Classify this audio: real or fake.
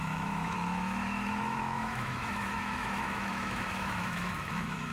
fake